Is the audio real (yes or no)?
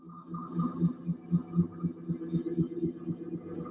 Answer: yes